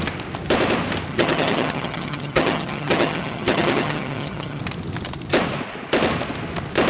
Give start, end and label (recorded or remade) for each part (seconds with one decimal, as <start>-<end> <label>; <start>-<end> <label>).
0.0-1.1 recorded; 1.1-4.6 remade; 4.6-6.9 recorded